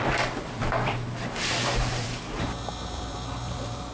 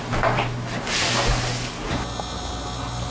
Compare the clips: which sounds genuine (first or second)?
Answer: second